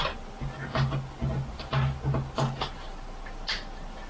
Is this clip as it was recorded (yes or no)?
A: yes